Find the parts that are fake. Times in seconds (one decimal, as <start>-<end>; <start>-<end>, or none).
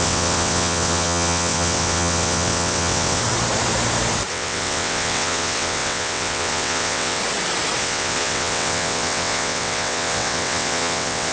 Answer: 0.0-3.2; 4.3-7.2; 7.8-11.3